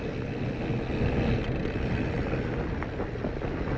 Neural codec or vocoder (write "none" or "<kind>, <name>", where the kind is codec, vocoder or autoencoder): none